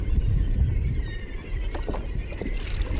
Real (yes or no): no